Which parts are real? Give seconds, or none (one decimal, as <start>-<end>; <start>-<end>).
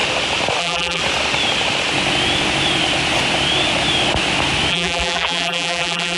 0.0-0.6; 1.0-4.7